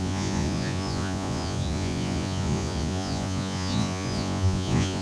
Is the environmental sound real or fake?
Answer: fake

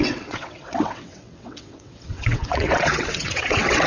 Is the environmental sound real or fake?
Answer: fake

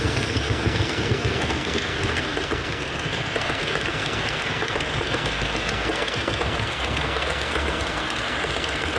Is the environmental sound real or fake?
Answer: fake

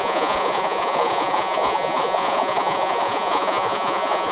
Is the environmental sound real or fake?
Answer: fake